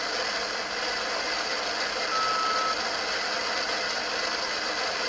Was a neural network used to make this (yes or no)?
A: no